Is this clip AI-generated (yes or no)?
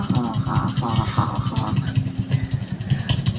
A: no